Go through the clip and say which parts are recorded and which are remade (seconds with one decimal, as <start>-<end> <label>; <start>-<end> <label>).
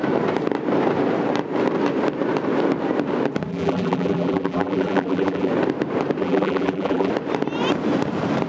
0.0-3.5 recorded; 3.5-5.5 remade; 5.5-6.2 recorded; 6.2-7.1 remade; 7.1-8.5 recorded